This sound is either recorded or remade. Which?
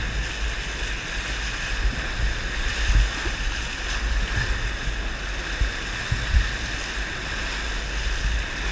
recorded